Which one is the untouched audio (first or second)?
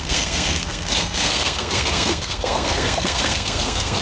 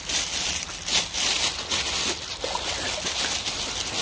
second